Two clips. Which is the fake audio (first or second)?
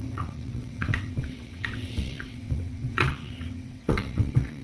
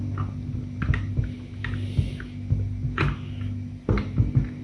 first